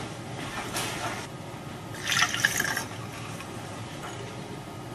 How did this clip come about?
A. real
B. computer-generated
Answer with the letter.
A